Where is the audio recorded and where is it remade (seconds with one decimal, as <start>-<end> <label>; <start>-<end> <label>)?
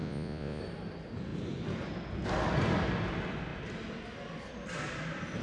0.0-0.6 remade; 0.6-5.4 recorded